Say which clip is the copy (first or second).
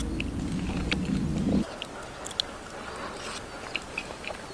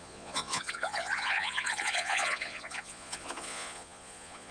second